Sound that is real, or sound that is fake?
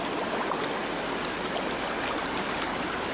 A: real